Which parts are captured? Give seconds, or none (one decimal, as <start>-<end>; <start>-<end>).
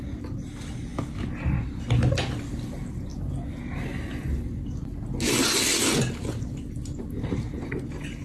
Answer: 0.0-8.2